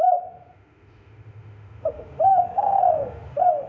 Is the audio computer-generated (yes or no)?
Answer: yes